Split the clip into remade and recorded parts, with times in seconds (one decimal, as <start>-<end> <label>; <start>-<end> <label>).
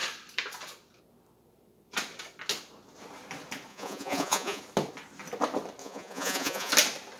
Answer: 0.0-3.7 recorded; 3.7-4.6 remade; 4.6-5.8 recorded; 5.8-6.7 remade; 6.7-7.2 recorded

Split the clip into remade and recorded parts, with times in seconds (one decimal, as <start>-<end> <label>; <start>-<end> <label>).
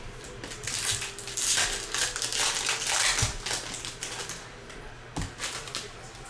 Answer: 0.0-6.3 recorded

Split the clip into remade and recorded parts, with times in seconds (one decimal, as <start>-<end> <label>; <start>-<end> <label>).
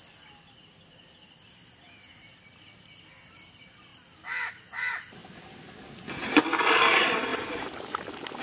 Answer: 0.0-8.4 recorded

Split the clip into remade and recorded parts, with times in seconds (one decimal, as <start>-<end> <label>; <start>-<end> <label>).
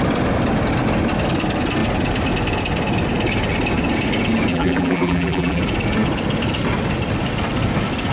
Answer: 0.0-4.5 recorded; 4.5-5.6 remade; 5.6-8.1 recorded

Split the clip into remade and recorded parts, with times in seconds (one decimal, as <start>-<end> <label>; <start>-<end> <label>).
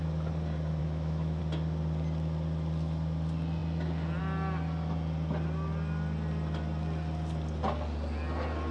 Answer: 0.0-0.8 recorded; 0.8-1.4 remade; 1.4-8.7 recorded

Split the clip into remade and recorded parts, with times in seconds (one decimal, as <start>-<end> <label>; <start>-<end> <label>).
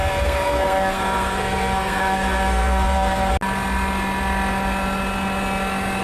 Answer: 0.0-3.3 remade; 3.3-6.0 recorded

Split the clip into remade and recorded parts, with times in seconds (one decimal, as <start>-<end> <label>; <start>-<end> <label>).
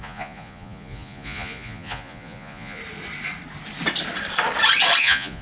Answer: 0.0-2.8 remade; 2.8-5.0 recorded; 5.0-5.4 remade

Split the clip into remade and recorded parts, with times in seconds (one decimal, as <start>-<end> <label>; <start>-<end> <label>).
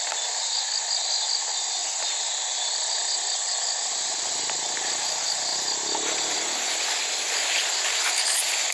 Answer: 0.0-8.7 recorded